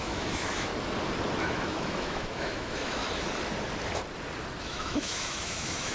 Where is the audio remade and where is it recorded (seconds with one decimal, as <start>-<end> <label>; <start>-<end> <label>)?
0.0-0.7 remade; 0.7-1.4 recorded; 1.4-3.0 remade; 3.0-4.6 recorded; 4.6-5.9 remade